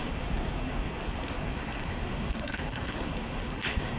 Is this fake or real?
fake